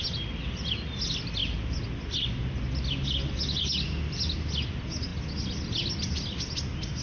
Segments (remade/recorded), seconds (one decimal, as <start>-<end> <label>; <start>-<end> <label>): 0.0-7.0 recorded